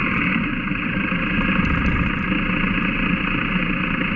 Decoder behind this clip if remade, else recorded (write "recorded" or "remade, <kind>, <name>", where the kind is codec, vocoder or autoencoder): recorded